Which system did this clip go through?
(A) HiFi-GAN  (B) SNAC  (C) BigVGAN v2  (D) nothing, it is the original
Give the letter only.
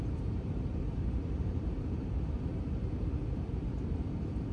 C